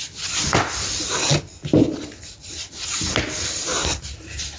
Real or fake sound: real